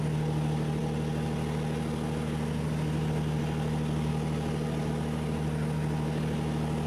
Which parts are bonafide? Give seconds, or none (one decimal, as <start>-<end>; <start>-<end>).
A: 0.0-6.9